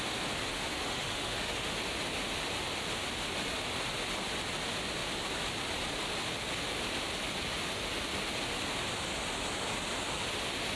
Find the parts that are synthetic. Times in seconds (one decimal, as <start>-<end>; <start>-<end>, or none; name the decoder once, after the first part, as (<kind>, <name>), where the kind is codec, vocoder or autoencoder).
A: 0.5-1.8 (autoencoder, DAC-VAE)